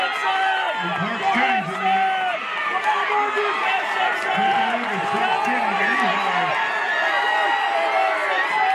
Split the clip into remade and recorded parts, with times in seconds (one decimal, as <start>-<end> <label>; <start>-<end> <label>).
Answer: 0.0-2.3 recorded; 2.3-4.3 remade; 4.3-8.7 recorded